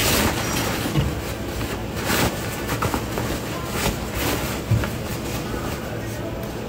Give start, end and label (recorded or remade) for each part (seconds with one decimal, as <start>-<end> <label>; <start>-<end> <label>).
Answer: 0.0-1.8 recorded; 1.8-2.3 remade; 2.3-6.7 recorded